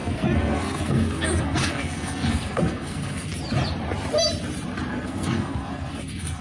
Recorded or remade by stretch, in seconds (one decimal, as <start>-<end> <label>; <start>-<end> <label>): 0.0-3.3 remade; 3.3-4.9 recorded; 4.9-6.4 remade